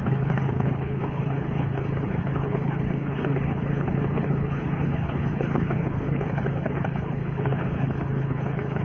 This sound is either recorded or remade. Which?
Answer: remade